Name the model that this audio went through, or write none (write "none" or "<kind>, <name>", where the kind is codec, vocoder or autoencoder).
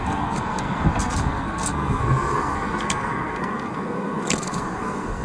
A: codec, SNAC